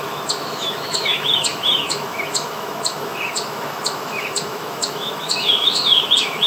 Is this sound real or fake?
fake